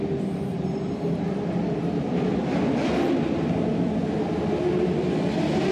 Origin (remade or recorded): recorded